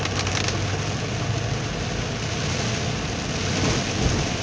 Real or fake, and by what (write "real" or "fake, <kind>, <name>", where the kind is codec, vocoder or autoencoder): real